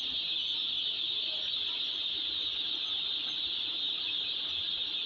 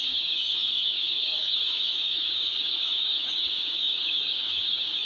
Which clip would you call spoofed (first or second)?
second